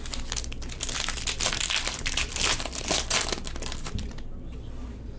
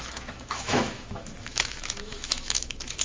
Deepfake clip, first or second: second